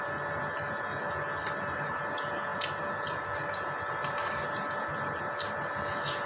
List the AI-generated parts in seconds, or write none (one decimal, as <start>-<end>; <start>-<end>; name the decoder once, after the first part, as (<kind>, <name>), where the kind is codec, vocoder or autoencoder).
none